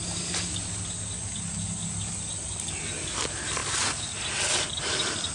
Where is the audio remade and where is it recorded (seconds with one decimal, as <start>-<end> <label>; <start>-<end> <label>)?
0.0-5.3 recorded